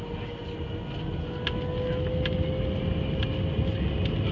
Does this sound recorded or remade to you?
recorded